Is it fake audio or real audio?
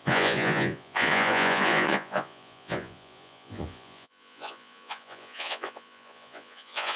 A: fake